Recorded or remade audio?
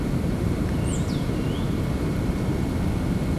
recorded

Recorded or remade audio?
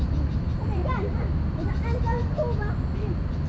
recorded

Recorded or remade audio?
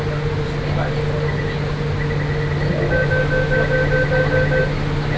recorded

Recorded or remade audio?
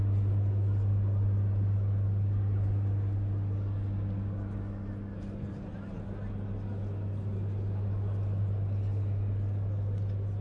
recorded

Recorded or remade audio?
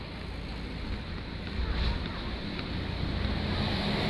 recorded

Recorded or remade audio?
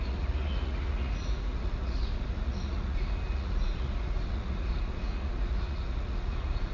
remade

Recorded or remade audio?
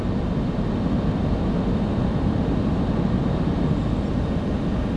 recorded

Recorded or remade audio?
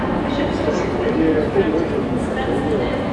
recorded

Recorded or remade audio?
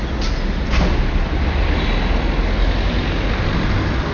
recorded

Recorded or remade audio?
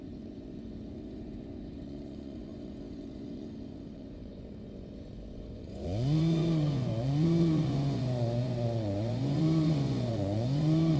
remade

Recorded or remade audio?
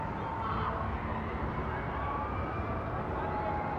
recorded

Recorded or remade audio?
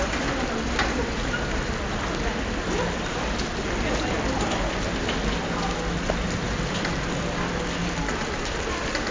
recorded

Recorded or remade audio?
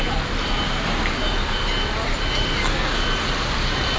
recorded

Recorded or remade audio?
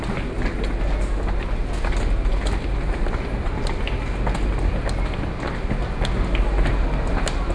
recorded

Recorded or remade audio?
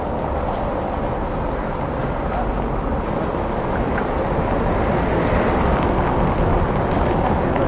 recorded